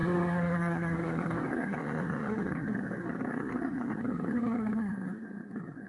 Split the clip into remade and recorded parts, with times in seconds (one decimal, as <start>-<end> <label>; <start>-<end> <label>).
0.0-5.9 remade